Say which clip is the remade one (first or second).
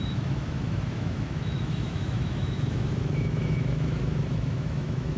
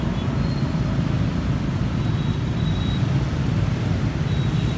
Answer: first